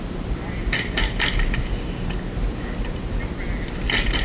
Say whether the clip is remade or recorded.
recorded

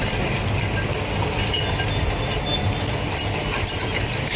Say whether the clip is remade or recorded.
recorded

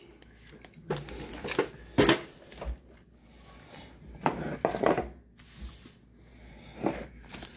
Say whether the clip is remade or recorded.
recorded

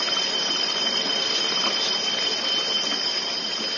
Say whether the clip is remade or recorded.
recorded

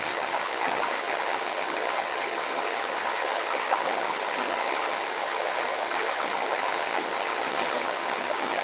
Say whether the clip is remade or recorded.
remade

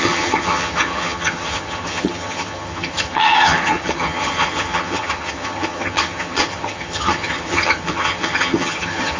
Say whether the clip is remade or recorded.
remade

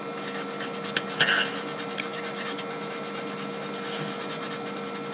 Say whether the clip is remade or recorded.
recorded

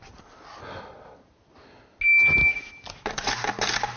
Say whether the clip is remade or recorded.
recorded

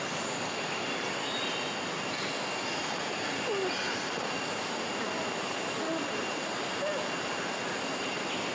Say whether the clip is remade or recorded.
recorded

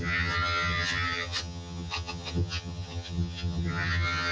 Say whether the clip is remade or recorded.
remade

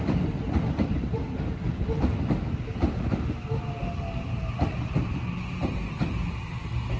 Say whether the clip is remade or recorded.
recorded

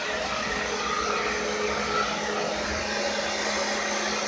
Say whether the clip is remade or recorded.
recorded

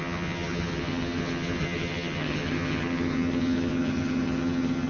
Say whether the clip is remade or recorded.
remade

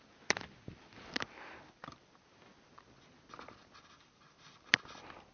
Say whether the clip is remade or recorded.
recorded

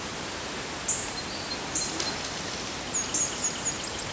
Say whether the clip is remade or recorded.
recorded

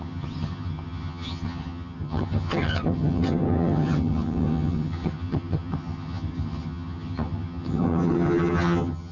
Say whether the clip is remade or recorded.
remade